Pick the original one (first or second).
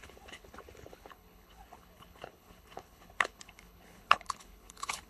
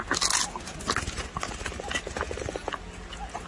second